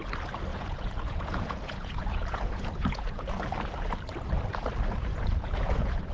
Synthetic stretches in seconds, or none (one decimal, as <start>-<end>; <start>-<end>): 0.5-3.4; 5.1-6.1